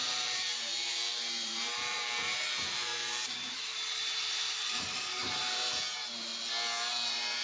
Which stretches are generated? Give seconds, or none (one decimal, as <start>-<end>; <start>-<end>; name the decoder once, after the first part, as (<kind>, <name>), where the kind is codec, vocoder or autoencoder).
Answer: 0.0-6.3 (vocoder, BigVGAN v2); 6.9-7.4